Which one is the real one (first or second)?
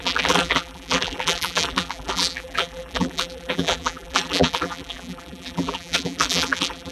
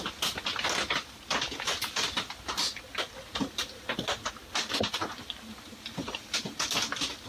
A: second